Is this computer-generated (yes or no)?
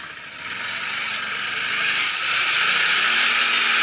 no